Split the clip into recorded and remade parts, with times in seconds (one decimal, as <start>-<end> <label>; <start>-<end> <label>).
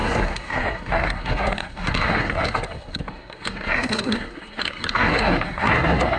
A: 0.0-6.2 remade